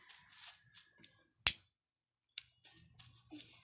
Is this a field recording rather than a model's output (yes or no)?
yes